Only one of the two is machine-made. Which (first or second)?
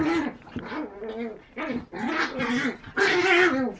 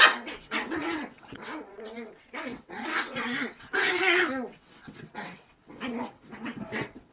second